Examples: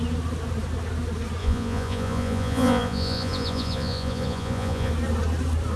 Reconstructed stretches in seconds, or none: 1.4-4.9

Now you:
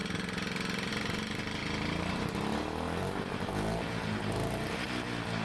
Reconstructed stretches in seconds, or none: none

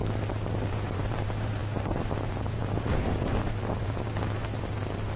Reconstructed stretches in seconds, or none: 0.7-5.2

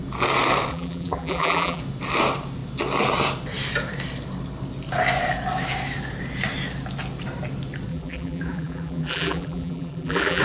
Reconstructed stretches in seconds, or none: 0.7-1.8; 7.9-10.4

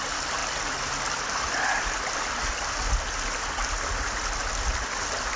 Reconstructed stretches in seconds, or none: none